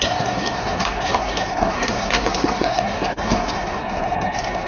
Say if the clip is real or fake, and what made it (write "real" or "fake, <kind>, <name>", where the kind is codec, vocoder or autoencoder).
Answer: fake, codec, SNAC